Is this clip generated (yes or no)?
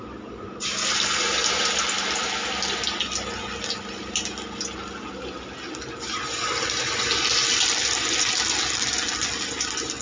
no